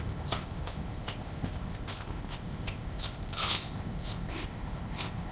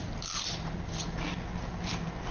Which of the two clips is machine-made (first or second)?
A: first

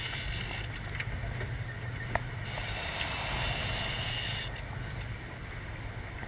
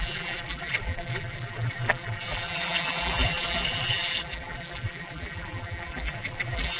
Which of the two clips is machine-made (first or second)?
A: second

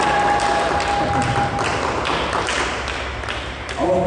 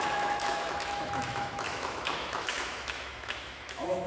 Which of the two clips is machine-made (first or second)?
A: second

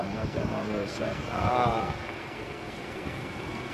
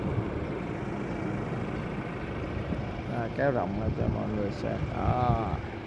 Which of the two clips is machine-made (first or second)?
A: first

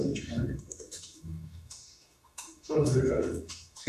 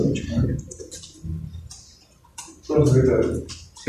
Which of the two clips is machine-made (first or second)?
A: first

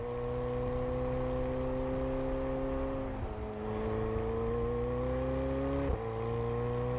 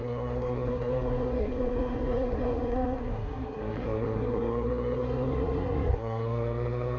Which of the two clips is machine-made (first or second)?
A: second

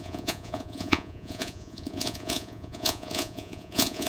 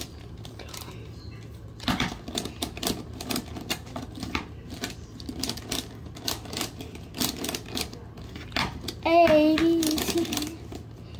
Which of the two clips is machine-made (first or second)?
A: first